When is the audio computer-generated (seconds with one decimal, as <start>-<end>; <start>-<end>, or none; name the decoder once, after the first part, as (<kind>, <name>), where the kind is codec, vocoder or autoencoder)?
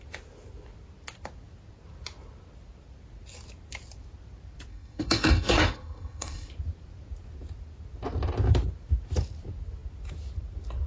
4.7-6.5 (codec, SNAC)